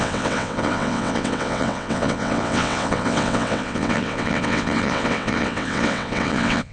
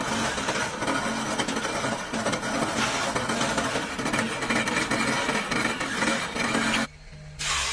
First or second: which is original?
second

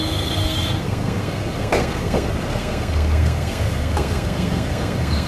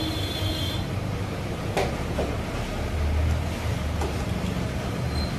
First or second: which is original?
second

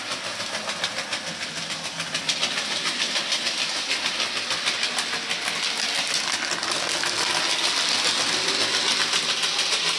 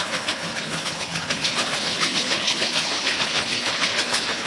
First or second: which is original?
first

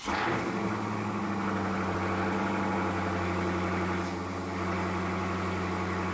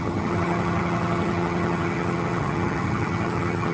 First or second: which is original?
first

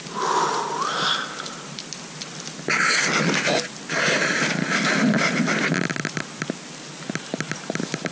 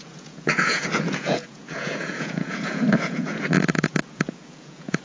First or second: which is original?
first